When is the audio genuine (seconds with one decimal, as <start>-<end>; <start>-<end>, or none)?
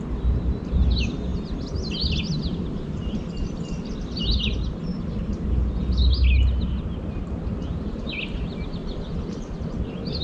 0.0-10.2